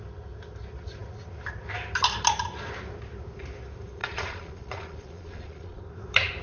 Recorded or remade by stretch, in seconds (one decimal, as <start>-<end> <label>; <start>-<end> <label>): 0.0-4.0 recorded; 4.0-5.8 remade; 5.8-6.4 recorded